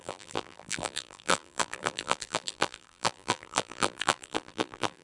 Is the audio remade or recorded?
remade